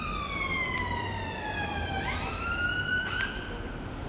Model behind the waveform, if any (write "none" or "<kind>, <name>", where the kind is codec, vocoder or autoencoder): vocoder, BigVGAN v2